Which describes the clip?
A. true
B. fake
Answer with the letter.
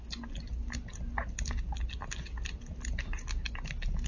A